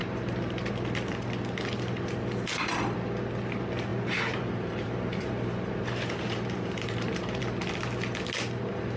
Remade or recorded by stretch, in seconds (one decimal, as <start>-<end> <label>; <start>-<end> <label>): 0.0-0.7 remade; 0.7-3.9 recorded; 3.9-7.4 remade; 7.4-9.0 recorded